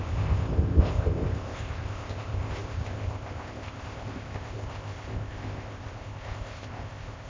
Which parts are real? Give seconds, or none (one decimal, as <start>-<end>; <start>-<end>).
none

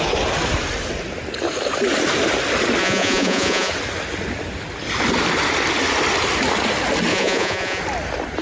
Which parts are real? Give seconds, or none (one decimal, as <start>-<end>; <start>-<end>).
0.0-2.8; 3.7-7.1; 7.8-8.4

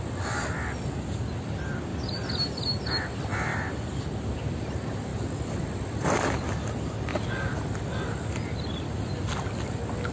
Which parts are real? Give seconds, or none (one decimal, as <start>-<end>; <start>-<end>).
0.0-3.5; 4.0-5.1; 6.4-10.1

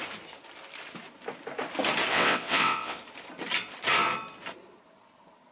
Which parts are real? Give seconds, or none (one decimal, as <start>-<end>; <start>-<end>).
0.0-2.1; 3.0-5.5